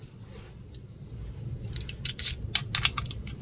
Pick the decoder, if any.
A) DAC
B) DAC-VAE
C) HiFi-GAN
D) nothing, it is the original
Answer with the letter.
D